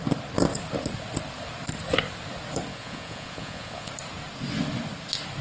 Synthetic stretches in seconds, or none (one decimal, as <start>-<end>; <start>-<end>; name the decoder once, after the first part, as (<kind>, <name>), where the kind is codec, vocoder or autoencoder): 2.7-3.9 (vocoder, Vocos)